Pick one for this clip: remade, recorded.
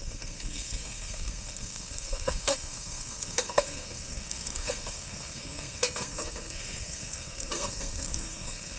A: remade